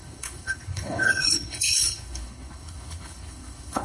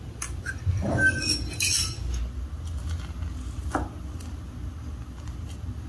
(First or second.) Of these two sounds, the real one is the second